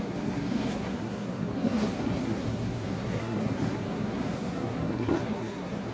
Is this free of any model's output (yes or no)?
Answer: no